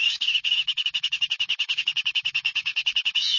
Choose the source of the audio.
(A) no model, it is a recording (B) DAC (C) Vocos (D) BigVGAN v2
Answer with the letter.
B